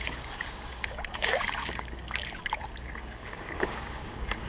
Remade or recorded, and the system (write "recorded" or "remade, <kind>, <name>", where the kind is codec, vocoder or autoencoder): remade, codec, DAC